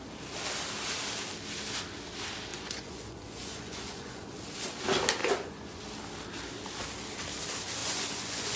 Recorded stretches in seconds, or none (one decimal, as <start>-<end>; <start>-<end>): 0.0-2.5; 4.4-5.2; 5.8-7.8